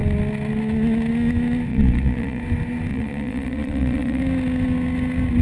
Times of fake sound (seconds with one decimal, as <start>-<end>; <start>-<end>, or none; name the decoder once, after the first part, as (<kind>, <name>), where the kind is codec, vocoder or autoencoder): 1.7-2.4 (vocoder, Vocos); 2.9-4.2